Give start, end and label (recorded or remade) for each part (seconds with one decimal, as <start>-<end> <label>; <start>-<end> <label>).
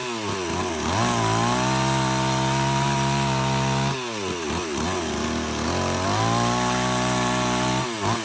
0.0-8.2 recorded